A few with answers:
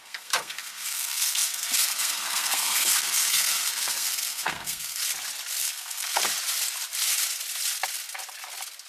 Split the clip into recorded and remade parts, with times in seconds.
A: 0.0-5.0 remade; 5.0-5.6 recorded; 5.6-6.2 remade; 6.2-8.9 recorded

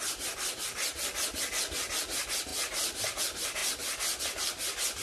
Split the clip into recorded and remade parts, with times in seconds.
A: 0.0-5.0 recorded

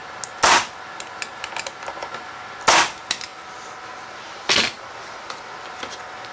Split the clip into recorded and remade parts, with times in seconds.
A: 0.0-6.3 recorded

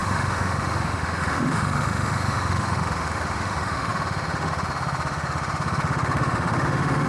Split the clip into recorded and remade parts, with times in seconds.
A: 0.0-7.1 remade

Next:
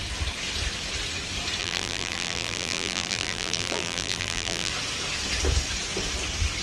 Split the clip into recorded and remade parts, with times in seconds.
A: 0.0-1.6 recorded; 1.6-4.7 remade; 4.7-6.6 recorded

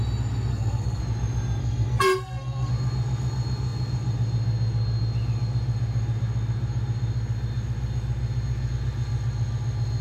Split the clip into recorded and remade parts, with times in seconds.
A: 0.0-0.5 recorded; 0.5-1.0 remade; 1.0-1.6 recorded; 1.6-2.7 remade; 2.7-10.0 recorded